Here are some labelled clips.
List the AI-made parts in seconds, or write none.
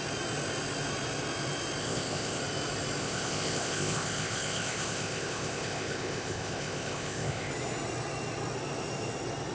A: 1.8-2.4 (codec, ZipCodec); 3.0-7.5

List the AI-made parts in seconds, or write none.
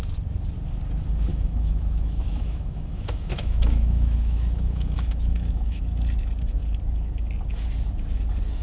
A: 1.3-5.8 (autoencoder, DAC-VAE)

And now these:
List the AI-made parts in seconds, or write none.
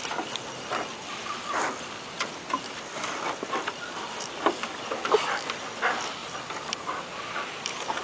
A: none